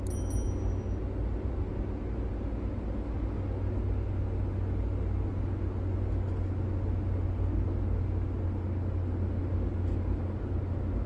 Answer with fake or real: real